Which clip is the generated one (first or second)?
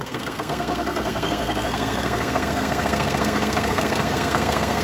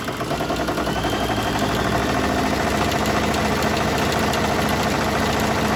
first